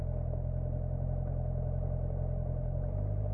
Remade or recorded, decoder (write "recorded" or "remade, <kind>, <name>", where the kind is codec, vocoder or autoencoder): recorded